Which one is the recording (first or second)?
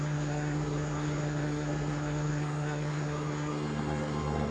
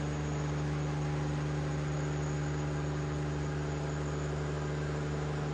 second